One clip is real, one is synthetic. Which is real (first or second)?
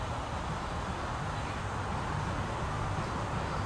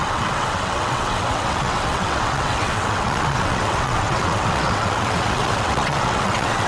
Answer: first